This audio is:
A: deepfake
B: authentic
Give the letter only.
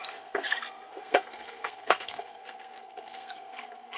A